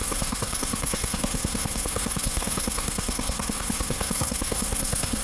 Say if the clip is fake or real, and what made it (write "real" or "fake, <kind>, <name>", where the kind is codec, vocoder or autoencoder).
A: fake, codec, SNAC